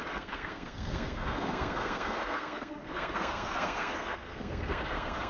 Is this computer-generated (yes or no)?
yes